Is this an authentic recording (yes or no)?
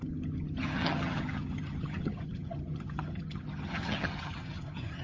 no